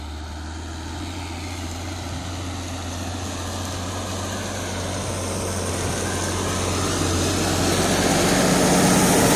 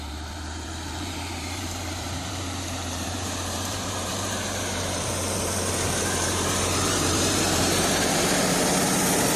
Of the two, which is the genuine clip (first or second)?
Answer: first